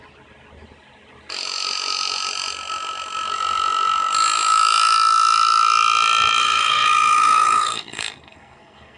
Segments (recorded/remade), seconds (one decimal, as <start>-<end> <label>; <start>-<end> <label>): 0.0-6.4 recorded; 6.4-9.0 remade